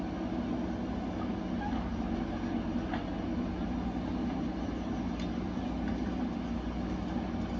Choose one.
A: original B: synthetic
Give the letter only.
A